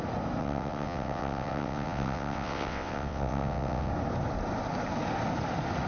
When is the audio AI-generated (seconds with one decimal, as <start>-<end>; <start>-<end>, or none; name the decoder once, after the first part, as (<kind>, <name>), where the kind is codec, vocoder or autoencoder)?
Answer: 0.4-3.9 (vocoder, WaveNeXt)